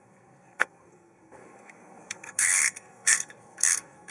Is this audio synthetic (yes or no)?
yes